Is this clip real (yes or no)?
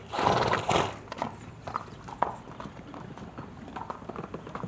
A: yes